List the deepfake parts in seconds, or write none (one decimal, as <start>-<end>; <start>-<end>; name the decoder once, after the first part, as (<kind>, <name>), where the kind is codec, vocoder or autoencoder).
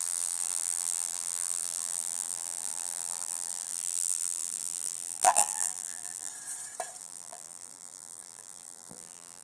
0.0-6.3 (vocoder, BigVGAN v2); 7.0-9.4